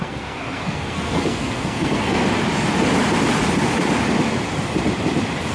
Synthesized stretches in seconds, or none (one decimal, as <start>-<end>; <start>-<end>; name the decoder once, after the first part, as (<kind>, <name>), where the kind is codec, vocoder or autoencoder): 0.0-2.2 (codec, SNAC)